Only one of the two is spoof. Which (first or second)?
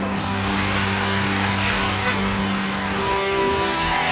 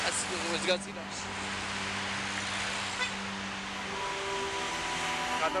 first